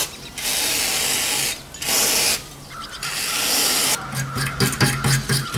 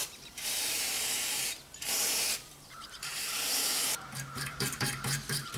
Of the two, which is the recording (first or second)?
first